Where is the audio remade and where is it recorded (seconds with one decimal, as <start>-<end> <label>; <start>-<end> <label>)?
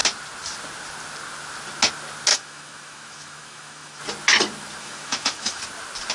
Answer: 0.0-2.3 recorded; 2.3-4.0 remade; 4.0-4.8 recorded; 4.8-5.6 remade; 5.6-6.1 recorded